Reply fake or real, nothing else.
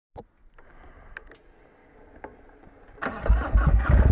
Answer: real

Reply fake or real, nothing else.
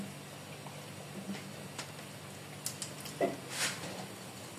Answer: real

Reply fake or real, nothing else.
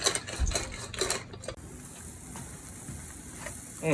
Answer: real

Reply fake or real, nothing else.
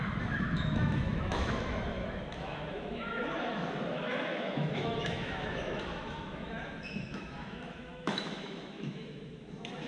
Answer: fake